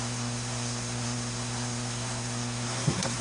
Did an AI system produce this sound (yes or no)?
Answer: yes